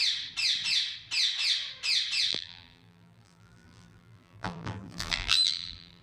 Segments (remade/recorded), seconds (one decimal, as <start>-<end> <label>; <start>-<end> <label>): 0.0-2.3 recorded; 2.3-6.0 remade